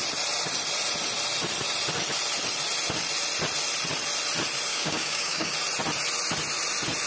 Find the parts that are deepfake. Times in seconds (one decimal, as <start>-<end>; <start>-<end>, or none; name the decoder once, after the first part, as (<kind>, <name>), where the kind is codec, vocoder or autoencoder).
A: 4.7-5.5 (codec, DAC)